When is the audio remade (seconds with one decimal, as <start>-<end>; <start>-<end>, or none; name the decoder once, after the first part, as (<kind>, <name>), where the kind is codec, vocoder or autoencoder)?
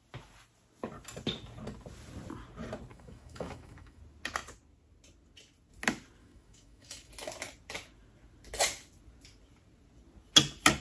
2.9-4.0 (autoencoder, DAC-VAE); 6.2-7.1